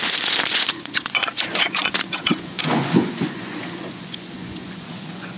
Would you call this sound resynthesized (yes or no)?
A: yes